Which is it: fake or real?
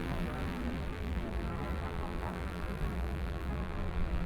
fake